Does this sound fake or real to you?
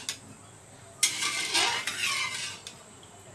real